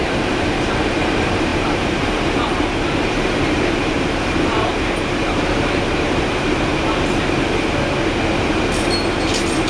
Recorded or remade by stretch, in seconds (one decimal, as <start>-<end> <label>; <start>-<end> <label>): 0.0-6.7 remade; 6.7-9.7 recorded